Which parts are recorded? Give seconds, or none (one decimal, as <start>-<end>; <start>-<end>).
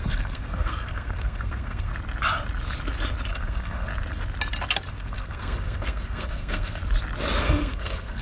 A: 1.9-3.3; 3.9-4.9; 6.8-7.4